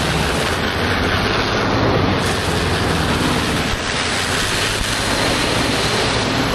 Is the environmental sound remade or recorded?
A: recorded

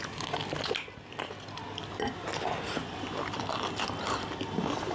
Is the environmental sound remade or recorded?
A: recorded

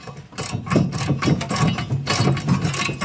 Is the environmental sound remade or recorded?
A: recorded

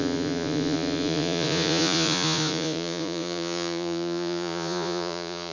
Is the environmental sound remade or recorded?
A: remade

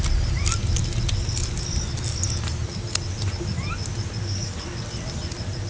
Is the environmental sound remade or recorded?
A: recorded